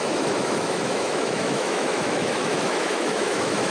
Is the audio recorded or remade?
remade